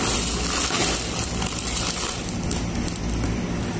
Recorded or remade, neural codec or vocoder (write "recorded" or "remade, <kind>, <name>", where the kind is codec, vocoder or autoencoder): recorded